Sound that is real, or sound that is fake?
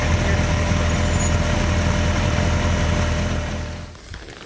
real